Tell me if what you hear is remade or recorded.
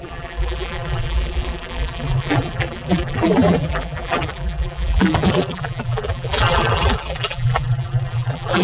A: remade